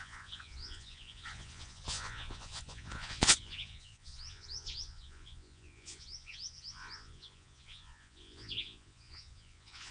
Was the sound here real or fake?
fake